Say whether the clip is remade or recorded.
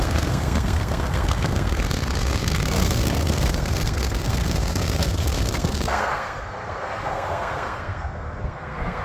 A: remade